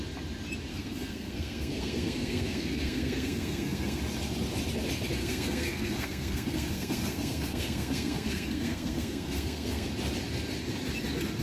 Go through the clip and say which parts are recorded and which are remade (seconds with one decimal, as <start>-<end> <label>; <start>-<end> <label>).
0.0-0.7 recorded; 0.7-4.0 remade; 4.0-5.2 recorded; 5.2-9.9 remade; 9.9-11.4 recorded